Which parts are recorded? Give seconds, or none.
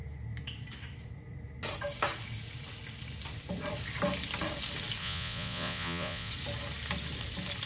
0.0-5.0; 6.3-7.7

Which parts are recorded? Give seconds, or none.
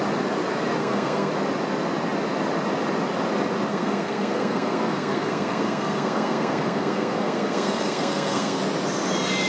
0.0-0.8; 1.3-3.7; 8.6-9.5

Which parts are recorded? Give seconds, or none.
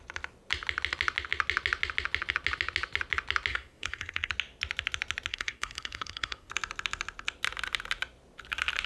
0.0-3.5; 4.3-5.3; 6.5-8.9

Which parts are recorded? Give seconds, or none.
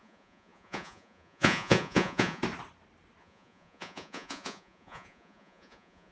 2.4-3.2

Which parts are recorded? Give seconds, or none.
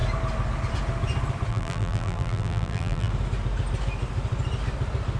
0.0-1.5; 3.1-5.2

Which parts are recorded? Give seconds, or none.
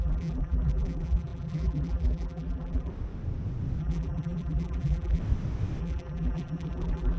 2.9-3.8; 5.2-5.8